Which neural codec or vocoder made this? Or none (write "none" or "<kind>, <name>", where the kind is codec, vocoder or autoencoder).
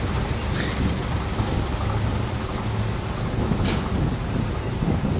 none